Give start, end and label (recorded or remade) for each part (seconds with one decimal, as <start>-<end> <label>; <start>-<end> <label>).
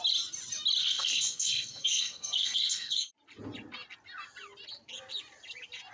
0.0-0.8 recorded; 0.8-3.1 remade; 3.1-5.9 recorded